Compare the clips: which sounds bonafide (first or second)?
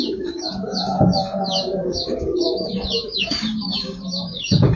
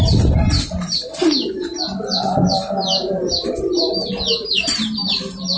second